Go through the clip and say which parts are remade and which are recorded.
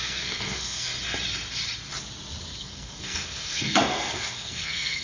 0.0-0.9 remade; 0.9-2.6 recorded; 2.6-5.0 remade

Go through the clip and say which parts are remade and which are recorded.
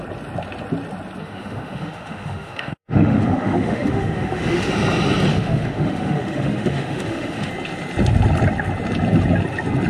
0.0-1.2 recorded; 1.2-4.7 remade; 4.7-5.3 recorded; 5.3-7.5 remade; 7.5-9.9 recorded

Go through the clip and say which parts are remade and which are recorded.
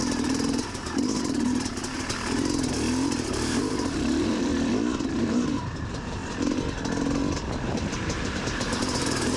0.0-1.8 remade; 1.8-2.7 recorded; 2.7-4.5 remade; 4.5-5.1 recorded; 5.1-6.2 remade; 6.2-7.7 recorded; 7.7-9.4 remade